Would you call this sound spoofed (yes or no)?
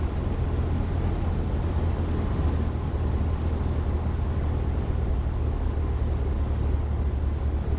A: no